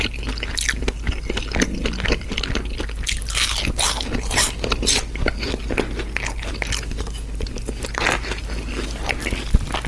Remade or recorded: recorded